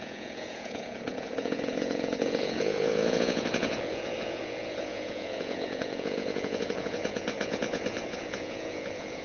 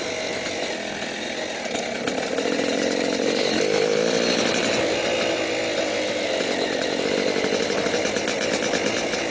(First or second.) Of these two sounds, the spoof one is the first